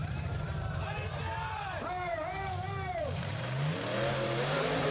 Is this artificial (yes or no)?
yes